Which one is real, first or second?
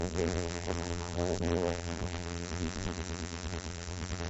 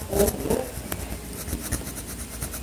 second